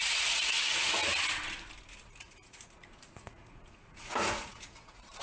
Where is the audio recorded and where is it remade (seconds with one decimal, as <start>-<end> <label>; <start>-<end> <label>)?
0.0-1.0 remade; 1.0-2.0 recorded; 2.0-5.2 remade